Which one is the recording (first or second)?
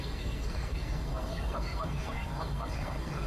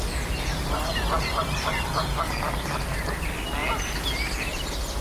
second